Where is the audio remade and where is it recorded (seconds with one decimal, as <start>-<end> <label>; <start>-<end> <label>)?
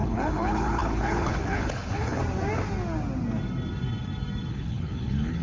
0.0-2.2 remade; 2.2-4.5 recorded; 4.5-5.4 remade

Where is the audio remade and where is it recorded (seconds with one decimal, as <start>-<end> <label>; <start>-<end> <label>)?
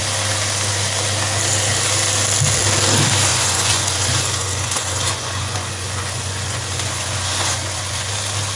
0.0-3.3 recorded; 3.3-8.1 remade; 8.1-8.6 recorded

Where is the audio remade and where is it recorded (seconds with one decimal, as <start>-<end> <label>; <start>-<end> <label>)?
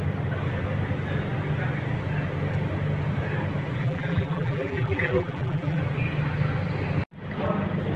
0.0-3.8 recorded; 3.8-5.8 remade; 5.8-8.0 recorded